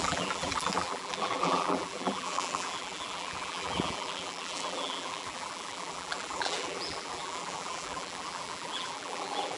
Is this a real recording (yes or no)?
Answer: no